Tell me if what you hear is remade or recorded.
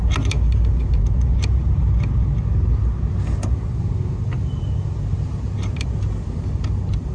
recorded